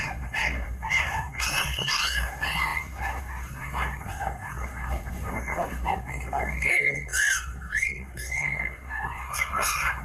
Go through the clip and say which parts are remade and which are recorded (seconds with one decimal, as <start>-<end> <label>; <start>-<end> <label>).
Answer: 0.0-10.0 remade